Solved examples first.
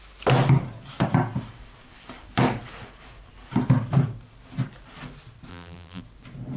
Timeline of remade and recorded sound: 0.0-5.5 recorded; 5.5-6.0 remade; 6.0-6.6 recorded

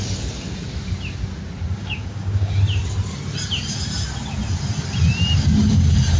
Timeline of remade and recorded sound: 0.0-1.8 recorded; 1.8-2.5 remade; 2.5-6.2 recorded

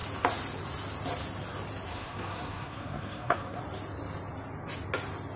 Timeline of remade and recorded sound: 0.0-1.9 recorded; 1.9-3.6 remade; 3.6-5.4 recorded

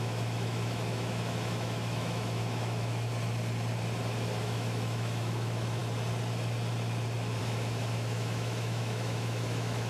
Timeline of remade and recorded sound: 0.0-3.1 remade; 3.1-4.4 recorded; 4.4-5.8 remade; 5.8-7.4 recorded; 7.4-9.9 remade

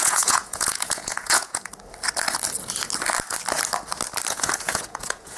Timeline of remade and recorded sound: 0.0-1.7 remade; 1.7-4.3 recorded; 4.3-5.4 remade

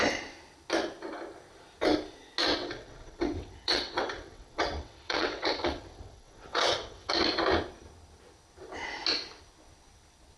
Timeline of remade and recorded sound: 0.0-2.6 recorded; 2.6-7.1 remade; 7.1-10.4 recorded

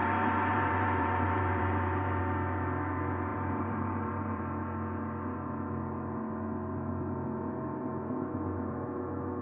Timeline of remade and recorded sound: 0.0-2.2 remade; 2.2-3.3 recorded; 3.3-4.4 remade; 4.4-9.4 recorded

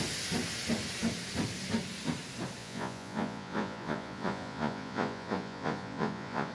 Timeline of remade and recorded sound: 0.0-2.6 recorded; 2.6-6.5 remade